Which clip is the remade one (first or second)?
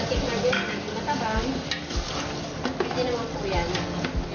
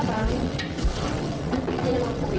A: second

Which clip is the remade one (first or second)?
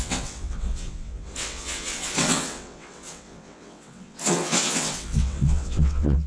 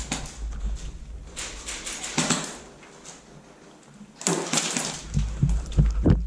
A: first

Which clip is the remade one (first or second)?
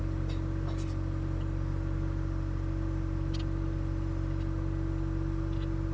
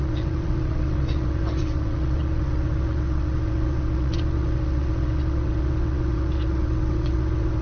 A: second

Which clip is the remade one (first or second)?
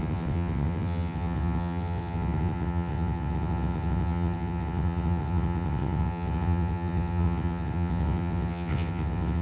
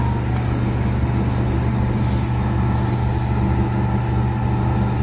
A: first